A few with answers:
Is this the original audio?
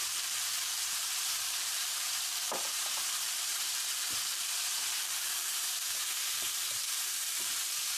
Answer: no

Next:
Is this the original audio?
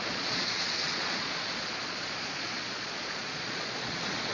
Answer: no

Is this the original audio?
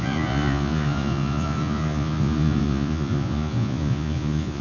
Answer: no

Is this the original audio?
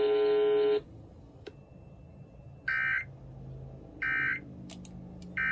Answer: yes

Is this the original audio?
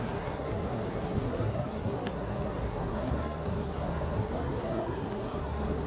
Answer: no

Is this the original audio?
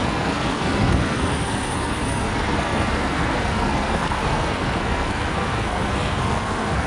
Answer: no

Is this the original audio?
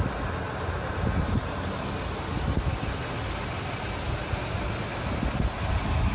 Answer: yes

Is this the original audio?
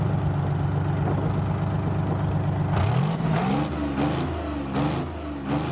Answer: yes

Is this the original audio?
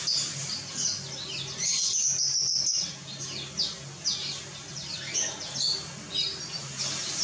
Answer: yes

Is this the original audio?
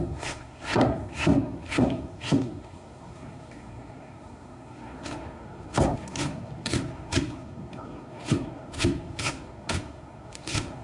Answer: no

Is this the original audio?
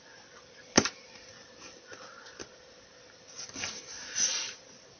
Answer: yes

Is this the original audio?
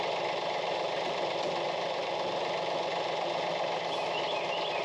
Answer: yes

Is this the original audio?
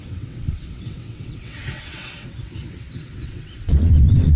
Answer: no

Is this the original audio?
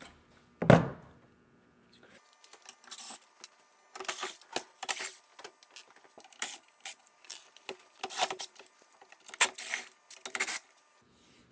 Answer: yes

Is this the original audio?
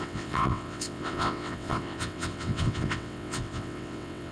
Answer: no